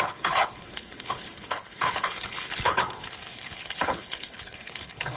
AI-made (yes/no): yes